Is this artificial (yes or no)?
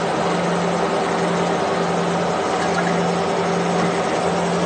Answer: no